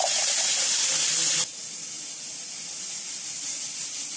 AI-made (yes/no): no